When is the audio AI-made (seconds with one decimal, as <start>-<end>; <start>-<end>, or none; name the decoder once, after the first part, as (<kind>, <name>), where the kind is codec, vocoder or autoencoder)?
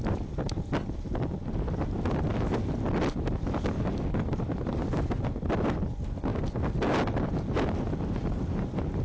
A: none